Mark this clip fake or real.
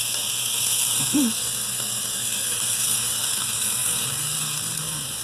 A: fake